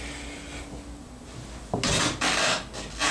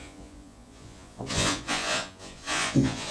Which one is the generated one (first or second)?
second